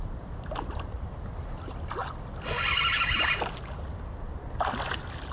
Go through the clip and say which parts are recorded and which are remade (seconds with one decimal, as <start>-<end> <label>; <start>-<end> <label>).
0.0-5.3 recorded